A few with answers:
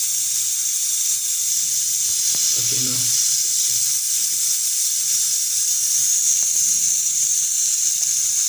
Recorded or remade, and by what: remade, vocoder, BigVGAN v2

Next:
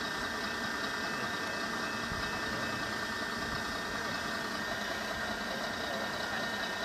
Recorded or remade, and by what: recorded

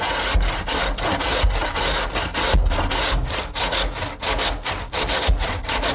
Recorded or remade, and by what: recorded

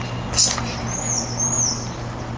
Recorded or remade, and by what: recorded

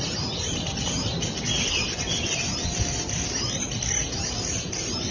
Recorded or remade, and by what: recorded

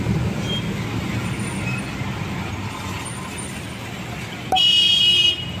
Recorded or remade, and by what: recorded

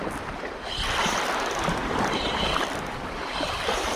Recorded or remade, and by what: remade, vocoder, BigVGAN v2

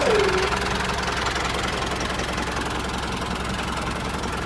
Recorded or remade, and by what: recorded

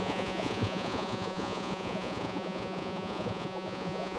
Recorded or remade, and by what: remade, vocoder, Vocos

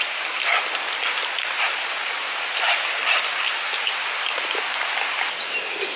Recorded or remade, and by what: recorded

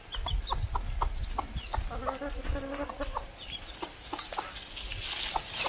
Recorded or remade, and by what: recorded